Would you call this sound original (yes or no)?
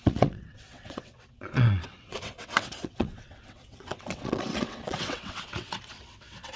no